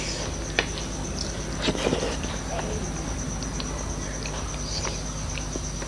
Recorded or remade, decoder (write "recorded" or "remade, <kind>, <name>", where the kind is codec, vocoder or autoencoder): recorded